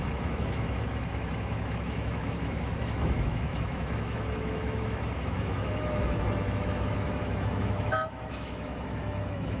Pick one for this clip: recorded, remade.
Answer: remade